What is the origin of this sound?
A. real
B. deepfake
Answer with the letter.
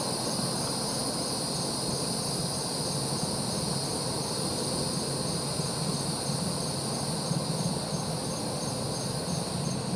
A